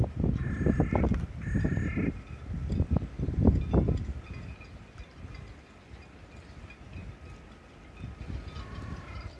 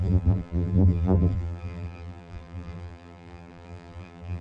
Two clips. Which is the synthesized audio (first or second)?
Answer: second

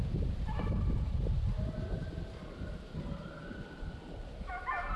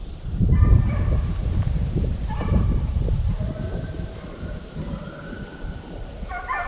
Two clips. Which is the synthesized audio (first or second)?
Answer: second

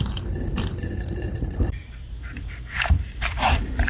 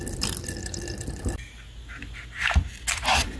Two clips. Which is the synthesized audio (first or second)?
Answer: first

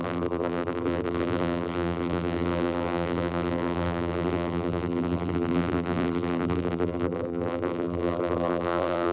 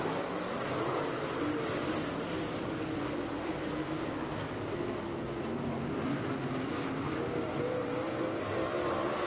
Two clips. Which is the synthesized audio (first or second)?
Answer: first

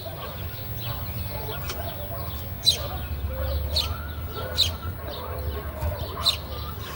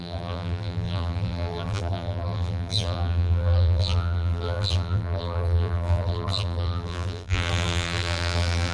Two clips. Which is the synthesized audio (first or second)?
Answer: second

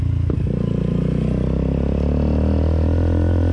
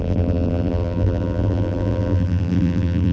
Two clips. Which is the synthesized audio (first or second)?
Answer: second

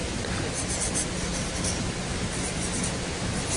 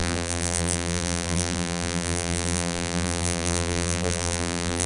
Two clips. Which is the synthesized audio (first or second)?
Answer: second